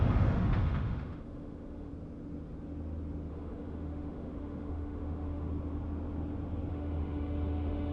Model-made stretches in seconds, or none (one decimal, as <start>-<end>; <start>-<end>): 0.0-1.9; 3.3-5.5; 6.7-7.9